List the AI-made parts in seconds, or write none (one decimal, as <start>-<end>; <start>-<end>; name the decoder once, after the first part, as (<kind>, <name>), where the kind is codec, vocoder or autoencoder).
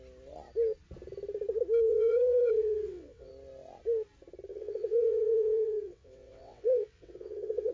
1.9-3.3 (vocoder, WaveNeXt); 4.5-7.7